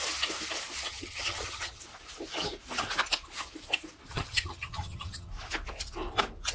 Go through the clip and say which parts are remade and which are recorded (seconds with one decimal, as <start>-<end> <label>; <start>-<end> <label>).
0.0-0.9 recorded; 0.9-1.8 remade; 1.8-4.1 recorded; 4.1-5.3 remade; 5.3-6.5 recorded